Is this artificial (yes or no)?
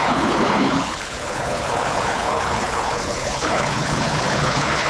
yes